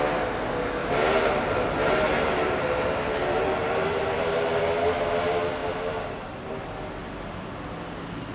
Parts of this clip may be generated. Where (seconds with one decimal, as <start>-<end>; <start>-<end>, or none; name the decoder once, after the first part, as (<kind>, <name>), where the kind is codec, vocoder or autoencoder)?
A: 0.8-4.6 (vocoder, BigVGAN v2); 5.6-6.5